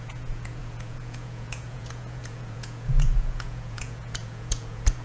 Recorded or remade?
remade